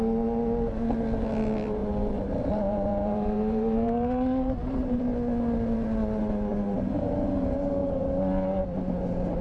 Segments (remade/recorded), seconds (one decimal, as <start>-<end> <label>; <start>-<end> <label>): 0.0-1.8 recorded; 1.8-5.0 remade; 5.0-6.5 recorded; 6.5-7.2 remade; 7.2-9.4 recorded